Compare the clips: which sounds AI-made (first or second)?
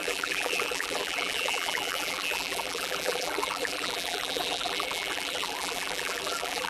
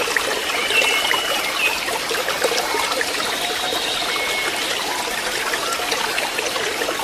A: first